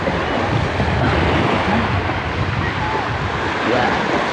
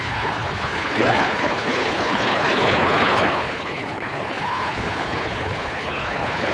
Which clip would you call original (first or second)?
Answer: first